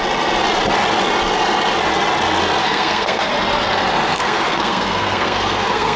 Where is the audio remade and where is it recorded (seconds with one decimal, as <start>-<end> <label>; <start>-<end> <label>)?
0.0-2.6 recorded; 2.6-3.3 remade; 3.3-4.1 recorded; 4.1-6.0 remade